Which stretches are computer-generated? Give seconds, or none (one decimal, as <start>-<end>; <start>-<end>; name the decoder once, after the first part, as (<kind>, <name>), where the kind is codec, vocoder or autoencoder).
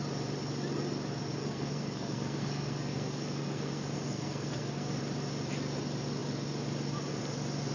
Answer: 1.4-5.0 (codec, SNAC)